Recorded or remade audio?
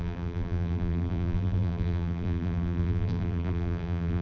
remade